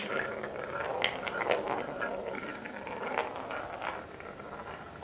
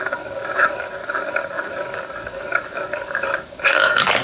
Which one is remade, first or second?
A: second